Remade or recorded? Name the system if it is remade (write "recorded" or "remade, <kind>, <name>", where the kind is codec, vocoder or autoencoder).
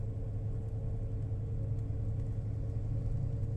recorded